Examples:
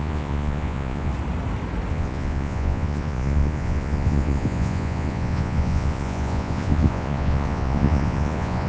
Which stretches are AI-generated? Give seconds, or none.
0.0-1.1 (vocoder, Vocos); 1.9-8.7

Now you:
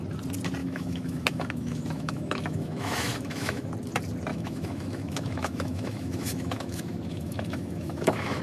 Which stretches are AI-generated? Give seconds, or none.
0.6-3.7 (autoencoder, DAC-VAE); 4.3-8.4

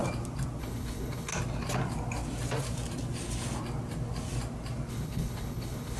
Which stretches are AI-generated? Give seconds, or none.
0.6-1.3 (codec, HILCodec); 4.9-6.0